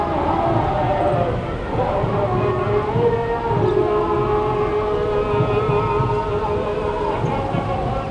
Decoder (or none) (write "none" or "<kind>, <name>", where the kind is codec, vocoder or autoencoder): none